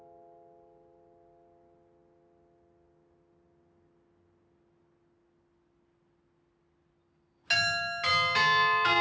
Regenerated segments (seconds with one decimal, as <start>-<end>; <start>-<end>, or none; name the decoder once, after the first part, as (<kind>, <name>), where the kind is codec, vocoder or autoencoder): none